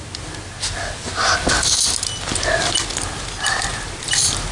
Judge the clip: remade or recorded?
recorded